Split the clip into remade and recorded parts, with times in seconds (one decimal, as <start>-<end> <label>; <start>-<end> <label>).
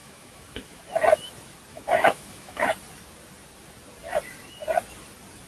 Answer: 0.0-0.8 remade; 0.8-1.7 recorded; 1.7-2.7 remade; 2.7-5.5 recorded